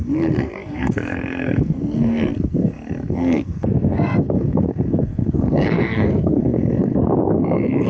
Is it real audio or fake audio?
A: fake